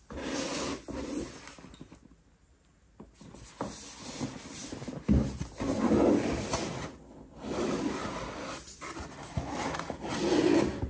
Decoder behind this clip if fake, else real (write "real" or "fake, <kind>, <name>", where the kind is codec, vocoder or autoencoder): real